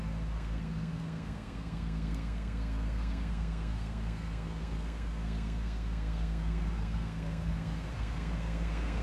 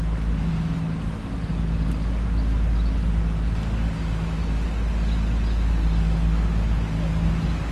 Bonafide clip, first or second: second